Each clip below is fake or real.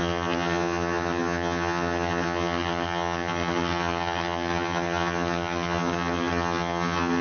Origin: fake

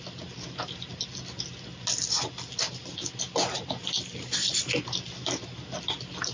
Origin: real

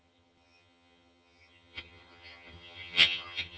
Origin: fake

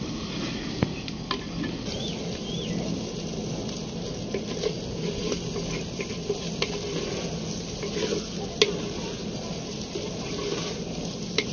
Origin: real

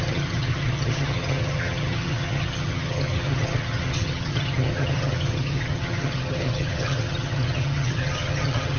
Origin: fake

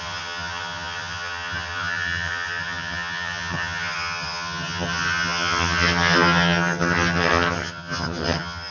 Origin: fake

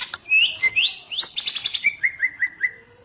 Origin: real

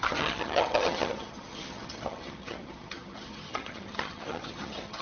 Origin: fake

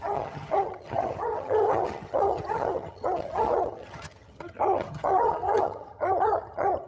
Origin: fake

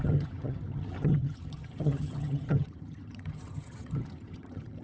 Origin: fake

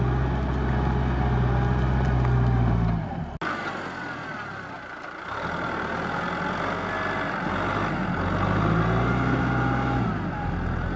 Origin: real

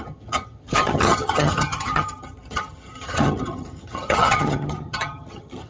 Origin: fake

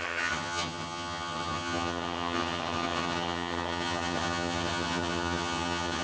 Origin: fake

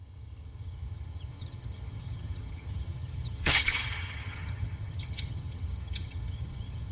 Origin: fake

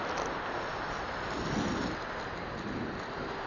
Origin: real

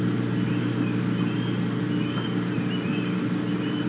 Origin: real